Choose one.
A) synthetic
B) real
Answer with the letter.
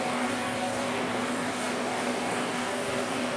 A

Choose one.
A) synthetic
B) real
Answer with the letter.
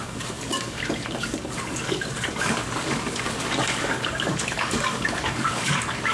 A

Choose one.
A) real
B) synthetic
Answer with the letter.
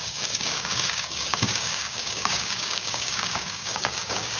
B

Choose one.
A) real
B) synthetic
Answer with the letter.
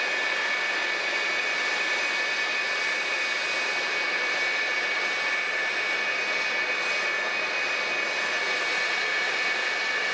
A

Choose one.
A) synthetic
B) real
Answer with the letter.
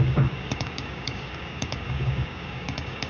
A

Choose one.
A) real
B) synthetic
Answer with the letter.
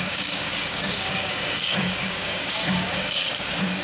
B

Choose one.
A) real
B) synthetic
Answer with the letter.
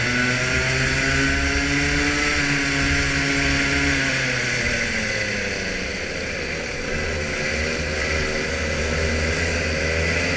A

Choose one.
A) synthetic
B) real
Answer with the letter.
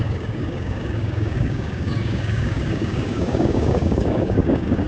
A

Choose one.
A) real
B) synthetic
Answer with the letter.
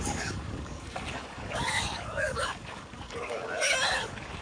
B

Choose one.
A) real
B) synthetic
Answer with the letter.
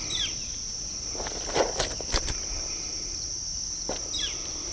A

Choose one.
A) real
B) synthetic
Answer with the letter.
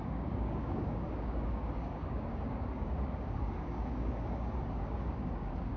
B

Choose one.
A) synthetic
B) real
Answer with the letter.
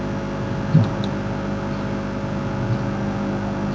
B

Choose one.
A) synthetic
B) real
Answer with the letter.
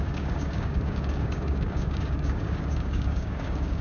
A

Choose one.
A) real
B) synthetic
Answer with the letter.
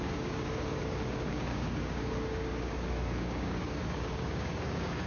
B